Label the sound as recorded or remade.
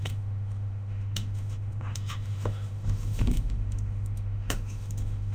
remade